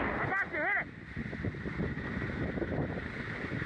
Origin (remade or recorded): recorded